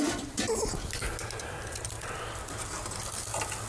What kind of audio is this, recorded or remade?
recorded